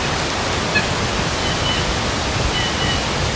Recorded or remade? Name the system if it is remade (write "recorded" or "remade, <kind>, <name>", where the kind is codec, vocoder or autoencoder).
recorded